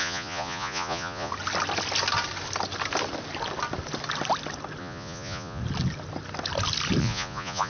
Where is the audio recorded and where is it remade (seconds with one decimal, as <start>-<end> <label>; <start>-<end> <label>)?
0.0-1.3 remade; 1.3-4.8 recorded; 4.8-5.6 remade; 5.6-7.0 recorded; 7.0-7.7 remade

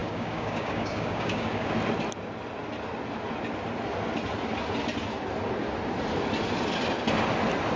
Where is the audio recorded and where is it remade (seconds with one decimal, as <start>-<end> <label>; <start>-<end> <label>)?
0.0-1.7 remade; 1.7-7.8 recorded

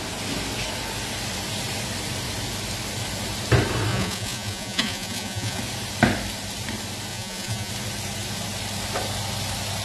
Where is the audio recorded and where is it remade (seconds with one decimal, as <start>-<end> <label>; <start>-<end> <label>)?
0.0-3.9 recorded; 3.9-5.6 remade; 5.6-7.1 recorded; 7.1-7.7 remade; 7.7-9.8 recorded

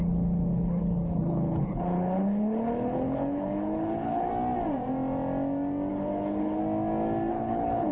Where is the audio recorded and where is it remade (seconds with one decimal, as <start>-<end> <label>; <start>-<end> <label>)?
0.0-4.3 remade; 4.3-5.9 recorded; 5.9-6.6 remade; 6.6-7.3 recorded; 7.3-7.9 remade

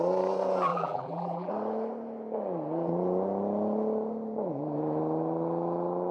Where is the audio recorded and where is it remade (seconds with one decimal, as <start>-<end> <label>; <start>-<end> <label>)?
0.0-0.7 recorded; 0.7-1.5 remade; 1.5-6.1 recorded

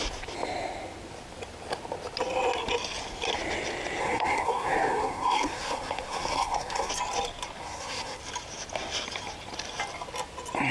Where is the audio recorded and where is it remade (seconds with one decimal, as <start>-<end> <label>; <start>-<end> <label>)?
0.0-4.0 recorded; 4.0-6.9 remade; 6.9-7.6 recorded; 7.6-8.2 remade; 8.2-10.7 recorded

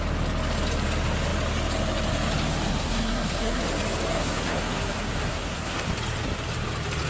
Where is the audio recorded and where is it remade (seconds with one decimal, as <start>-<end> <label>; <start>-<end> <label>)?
0.0-2.7 recorded; 2.7-3.6 remade; 3.6-4.1 recorded; 4.1-5.9 remade; 5.9-7.1 recorded